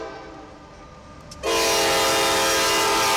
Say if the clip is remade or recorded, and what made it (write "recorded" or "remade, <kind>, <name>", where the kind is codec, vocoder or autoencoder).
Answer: recorded